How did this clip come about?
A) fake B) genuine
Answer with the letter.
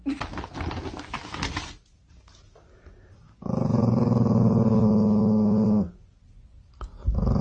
B